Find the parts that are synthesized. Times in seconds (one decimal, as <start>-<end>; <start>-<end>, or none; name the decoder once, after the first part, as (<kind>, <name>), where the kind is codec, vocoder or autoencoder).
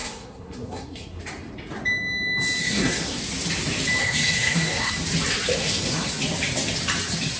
0.0-1.2 (codec, SNAC); 2.6-3.2; 4.0-4.9; 5.6-6.1